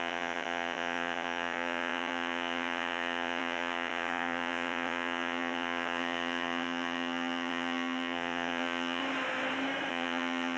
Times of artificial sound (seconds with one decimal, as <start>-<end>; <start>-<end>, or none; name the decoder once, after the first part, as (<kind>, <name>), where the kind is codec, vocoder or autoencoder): 0.0-9.0 (vocoder, HiFi-GAN); 9.9-10.6